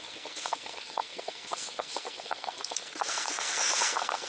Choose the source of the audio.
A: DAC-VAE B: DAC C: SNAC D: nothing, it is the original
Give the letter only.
C